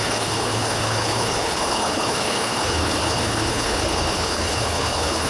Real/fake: fake